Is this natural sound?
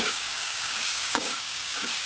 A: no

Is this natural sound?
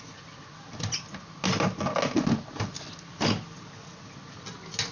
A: yes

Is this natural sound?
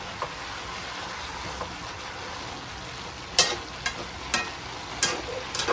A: yes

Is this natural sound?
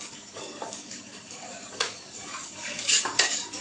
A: no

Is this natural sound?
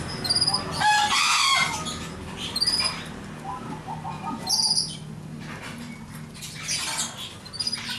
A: yes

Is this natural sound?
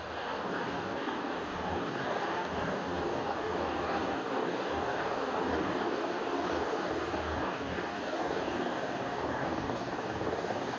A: no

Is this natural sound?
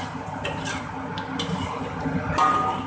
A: yes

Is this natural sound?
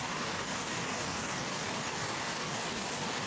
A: no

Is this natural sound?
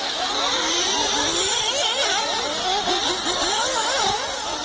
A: yes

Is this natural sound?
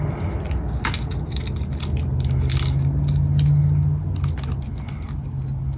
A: yes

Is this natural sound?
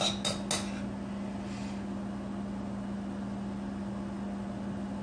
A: yes